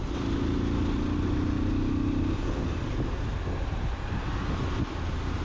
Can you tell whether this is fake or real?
real